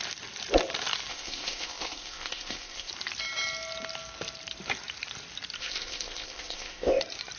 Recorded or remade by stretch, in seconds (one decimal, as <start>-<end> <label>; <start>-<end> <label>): 0.0-1.1 recorded; 1.1-2.9 remade; 2.9-5.6 recorded; 5.6-7.0 remade; 7.0-7.4 recorded